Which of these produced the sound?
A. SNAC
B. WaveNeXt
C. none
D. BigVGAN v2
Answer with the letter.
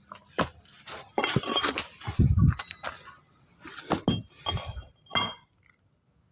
C